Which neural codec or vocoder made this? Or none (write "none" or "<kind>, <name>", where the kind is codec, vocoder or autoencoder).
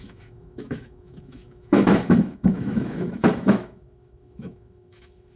autoencoder, DAC-VAE